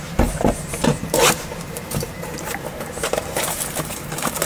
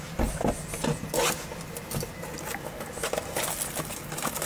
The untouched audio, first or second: second